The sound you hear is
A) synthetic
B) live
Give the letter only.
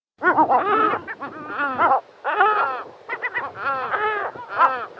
B